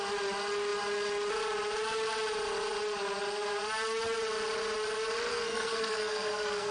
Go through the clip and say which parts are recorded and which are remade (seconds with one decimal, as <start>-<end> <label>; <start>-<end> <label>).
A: 0.0-5.3 recorded; 5.3-6.7 remade